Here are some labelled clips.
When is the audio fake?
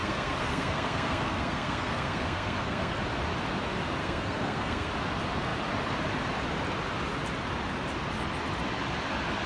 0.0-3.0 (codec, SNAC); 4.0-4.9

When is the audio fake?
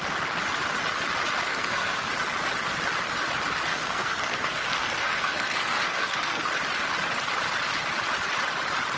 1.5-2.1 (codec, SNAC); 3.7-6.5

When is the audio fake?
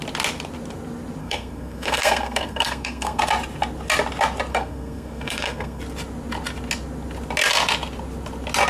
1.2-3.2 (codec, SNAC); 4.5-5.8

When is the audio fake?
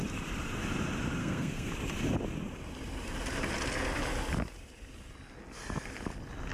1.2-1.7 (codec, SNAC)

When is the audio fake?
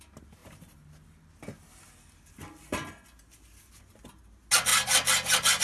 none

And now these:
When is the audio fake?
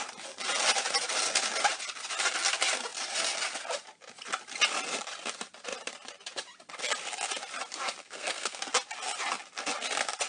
8.0-8.7 (codec, SNAC)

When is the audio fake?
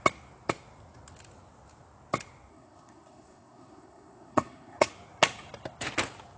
2.5-4.9 (codec, SNAC)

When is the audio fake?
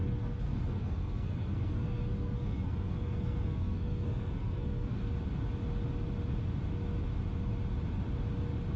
0.0-5.1 (codec, SNAC)